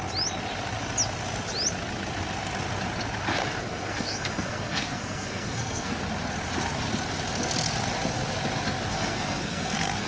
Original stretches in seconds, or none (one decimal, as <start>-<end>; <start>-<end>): 0.0-3.4; 6.0-8.9